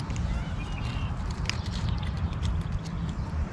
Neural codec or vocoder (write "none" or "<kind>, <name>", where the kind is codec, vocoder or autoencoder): none